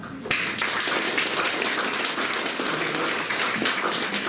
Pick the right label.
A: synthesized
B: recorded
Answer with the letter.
B